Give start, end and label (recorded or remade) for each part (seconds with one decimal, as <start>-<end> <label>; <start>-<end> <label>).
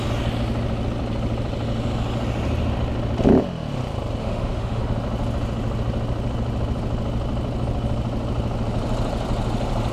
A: 0.0-4.2 recorded; 4.2-4.8 remade; 4.8-9.9 recorded